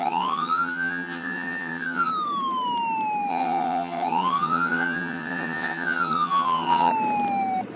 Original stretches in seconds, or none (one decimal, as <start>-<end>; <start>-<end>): 2.1-3.3; 6.9-7.8